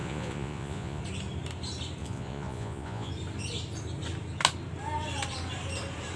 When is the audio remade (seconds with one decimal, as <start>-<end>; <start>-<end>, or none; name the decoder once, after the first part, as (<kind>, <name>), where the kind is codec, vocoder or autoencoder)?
0.0-1.0 (vocoder, Vocos); 2.0-3.1